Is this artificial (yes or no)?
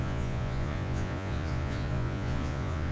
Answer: yes